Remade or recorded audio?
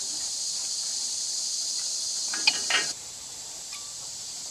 remade